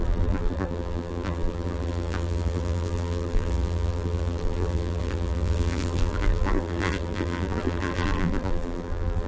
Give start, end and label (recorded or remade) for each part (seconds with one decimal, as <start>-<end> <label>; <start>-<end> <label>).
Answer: 0.0-9.3 remade